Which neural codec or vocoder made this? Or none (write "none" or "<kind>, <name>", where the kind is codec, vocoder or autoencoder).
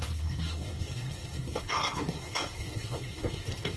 codec, SNAC